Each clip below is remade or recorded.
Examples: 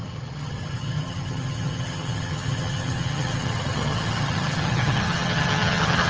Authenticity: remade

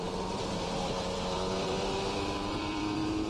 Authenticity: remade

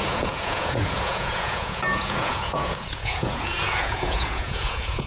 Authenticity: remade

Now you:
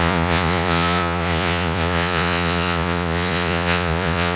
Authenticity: remade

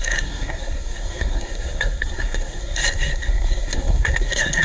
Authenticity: remade